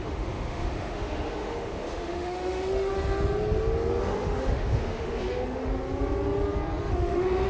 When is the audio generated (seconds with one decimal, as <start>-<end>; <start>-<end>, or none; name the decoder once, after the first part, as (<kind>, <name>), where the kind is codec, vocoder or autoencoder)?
0.0-2.9 (autoencoder, DAC-VAE); 4.0-5.7; 6.9-7.5

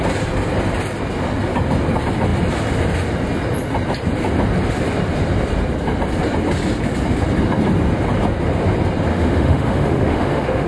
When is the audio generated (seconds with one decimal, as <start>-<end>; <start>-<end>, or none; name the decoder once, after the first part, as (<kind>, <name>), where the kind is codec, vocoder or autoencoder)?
9.1-10.7 (autoencoder, DAC-VAE)

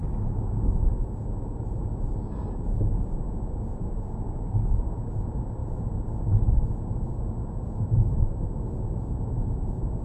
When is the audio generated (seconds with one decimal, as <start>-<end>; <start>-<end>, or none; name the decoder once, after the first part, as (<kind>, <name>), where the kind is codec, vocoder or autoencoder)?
none